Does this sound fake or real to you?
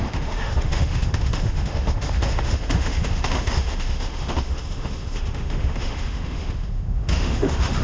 fake